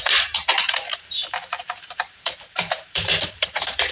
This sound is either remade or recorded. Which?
remade